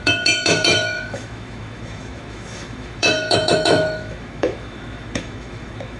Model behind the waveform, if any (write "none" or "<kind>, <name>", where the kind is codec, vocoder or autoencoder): autoencoder, DAC-VAE